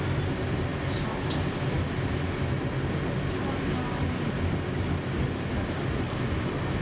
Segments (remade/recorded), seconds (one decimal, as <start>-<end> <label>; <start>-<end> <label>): 0.0-6.8 recorded